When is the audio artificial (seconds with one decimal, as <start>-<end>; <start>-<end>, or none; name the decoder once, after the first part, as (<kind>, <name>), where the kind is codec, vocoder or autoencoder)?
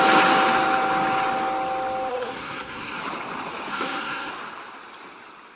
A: 2.1-3.0 (codec, SNAC); 3.7-4.3